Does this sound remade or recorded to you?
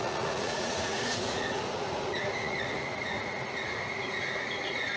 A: remade